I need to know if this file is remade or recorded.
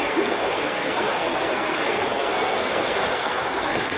remade